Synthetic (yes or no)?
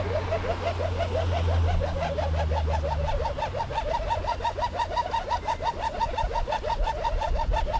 no